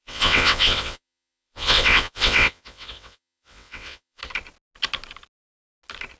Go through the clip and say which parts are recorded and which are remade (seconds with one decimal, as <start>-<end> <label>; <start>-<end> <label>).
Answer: 0.0-4.2 remade; 4.2-6.2 recorded